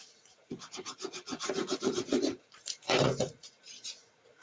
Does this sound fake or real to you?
fake